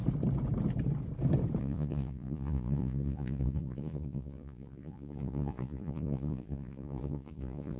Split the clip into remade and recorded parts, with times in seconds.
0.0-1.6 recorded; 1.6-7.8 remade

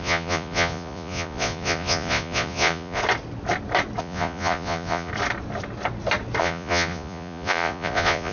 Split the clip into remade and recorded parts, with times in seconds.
0.0-3.0 remade; 3.0-4.0 recorded; 4.0-5.1 remade; 5.1-6.4 recorded; 6.4-8.3 remade

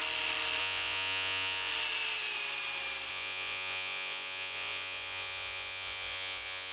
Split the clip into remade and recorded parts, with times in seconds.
0.0-0.6 recorded; 0.6-1.7 remade; 1.7-3.1 recorded; 3.1-6.7 remade

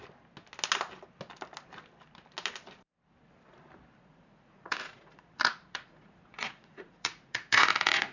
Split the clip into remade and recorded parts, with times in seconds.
0.0-4.0 recorded; 4.0-8.1 remade

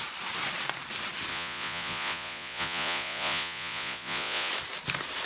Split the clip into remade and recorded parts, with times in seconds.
0.0-1.3 recorded; 1.3-4.5 remade; 4.5-5.3 recorded

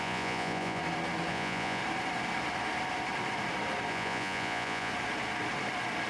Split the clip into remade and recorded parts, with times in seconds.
0.0-0.8 remade; 0.8-1.3 recorded; 1.3-1.8 remade; 1.8-3.9 recorded; 3.9-4.9 remade; 4.9-6.1 recorded

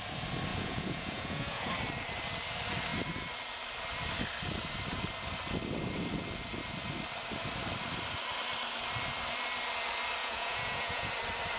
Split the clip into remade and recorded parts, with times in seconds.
0.0-0.5 recorded; 0.5-1.7 remade; 1.7-10.2 recorded; 10.2-11.1 remade; 11.1-11.6 recorded